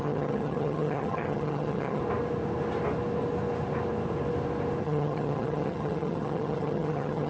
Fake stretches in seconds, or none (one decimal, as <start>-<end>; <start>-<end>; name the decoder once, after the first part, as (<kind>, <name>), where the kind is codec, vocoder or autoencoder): 0.0-2.0 (vocoder, HiFi-GAN); 4.8-7.3